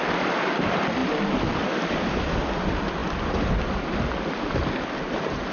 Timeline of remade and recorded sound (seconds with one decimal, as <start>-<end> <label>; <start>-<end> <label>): 0.0-5.5 recorded